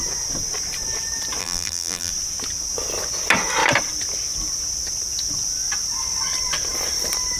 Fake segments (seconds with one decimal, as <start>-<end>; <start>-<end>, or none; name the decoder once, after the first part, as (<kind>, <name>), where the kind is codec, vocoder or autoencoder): 1.4-2.1 (vocoder, BigVGAN v2)